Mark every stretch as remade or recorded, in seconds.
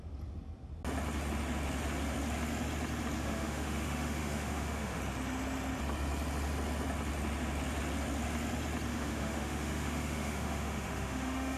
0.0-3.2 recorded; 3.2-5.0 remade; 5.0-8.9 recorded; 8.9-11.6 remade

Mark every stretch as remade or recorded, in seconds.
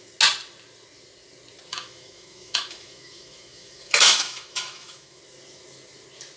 0.0-1.7 recorded; 1.7-5.2 remade; 5.2-6.4 recorded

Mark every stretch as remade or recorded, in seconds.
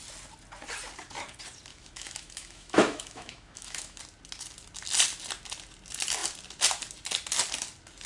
0.0-1.7 recorded; 1.7-4.0 remade; 4.0-8.1 recorded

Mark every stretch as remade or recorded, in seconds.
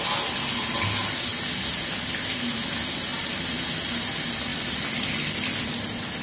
0.0-6.2 recorded